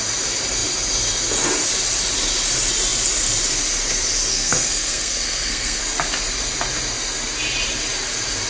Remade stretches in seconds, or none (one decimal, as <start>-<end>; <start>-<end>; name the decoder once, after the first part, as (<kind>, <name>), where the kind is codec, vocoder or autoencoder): 4.3-5.8 (codec, SNAC)